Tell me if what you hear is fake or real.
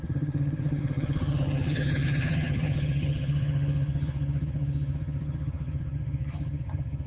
fake